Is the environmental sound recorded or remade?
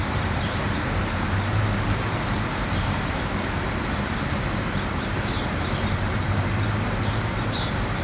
remade